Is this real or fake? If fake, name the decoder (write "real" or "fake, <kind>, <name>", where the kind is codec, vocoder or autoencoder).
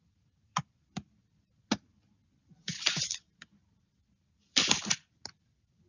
real